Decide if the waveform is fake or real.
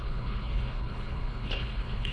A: fake